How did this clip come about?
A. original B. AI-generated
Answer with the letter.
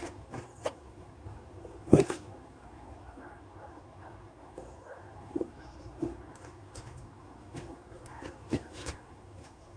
B